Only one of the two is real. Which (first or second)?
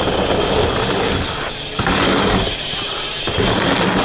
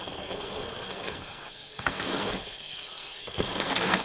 first